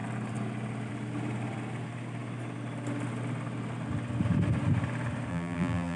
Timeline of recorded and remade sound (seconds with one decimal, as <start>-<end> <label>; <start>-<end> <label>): 0.0-5.3 recorded; 5.3-6.0 remade